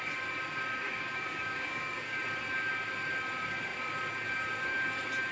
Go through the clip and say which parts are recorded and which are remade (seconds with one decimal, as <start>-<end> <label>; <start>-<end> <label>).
0.0-0.8 recorded; 0.8-2.2 remade; 2.2-5.3 recorded